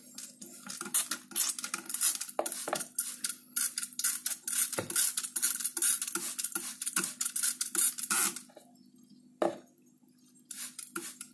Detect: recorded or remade recorded